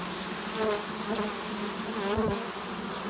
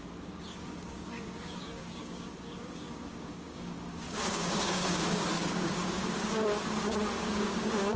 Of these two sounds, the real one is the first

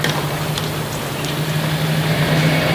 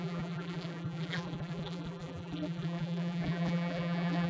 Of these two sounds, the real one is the first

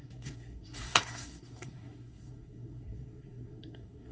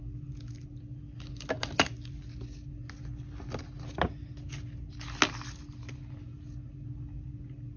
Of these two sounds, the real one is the second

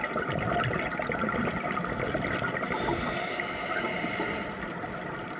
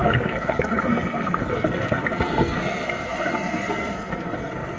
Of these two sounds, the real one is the first